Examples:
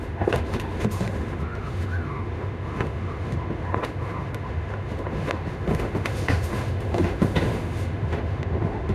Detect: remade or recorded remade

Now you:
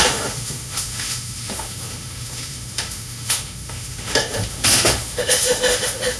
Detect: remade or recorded remade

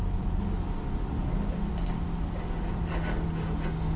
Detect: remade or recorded recorded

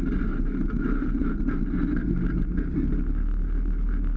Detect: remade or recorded recorded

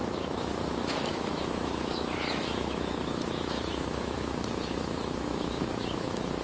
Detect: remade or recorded remade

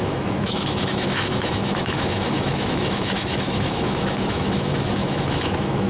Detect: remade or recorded remade